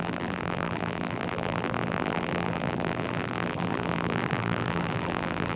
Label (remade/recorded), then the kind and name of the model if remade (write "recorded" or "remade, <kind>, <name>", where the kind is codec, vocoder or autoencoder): remade, vocoder, BigVGAN v2